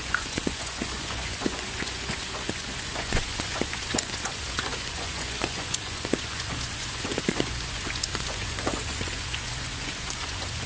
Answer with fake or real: fake